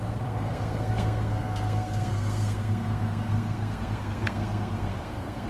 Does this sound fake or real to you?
fake